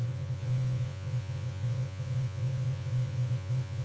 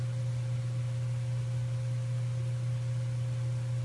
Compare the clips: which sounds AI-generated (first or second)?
first